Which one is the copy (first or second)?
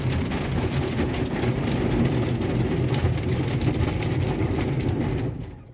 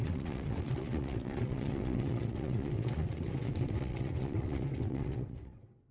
second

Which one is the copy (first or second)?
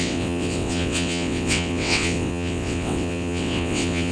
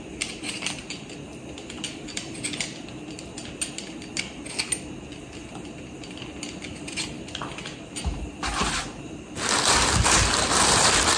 first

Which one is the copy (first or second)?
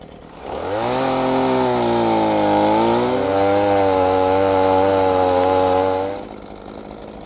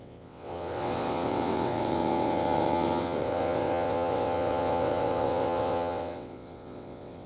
second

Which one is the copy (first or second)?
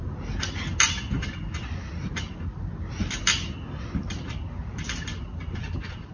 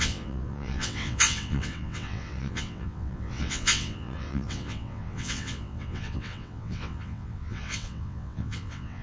second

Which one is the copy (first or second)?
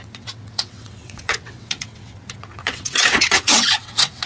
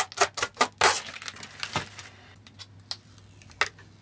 first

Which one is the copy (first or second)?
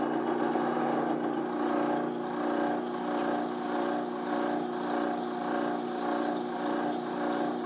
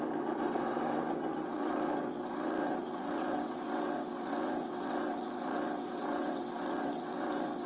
second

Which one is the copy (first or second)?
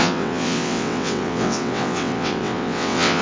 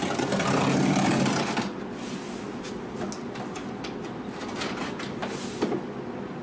first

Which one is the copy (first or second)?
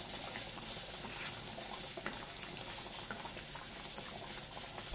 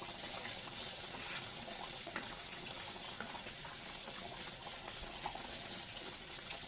second